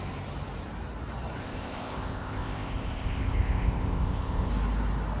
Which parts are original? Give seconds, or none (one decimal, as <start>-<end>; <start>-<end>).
0.0-1.4; 4.5-5.2